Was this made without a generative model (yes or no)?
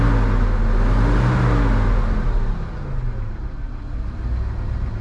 yes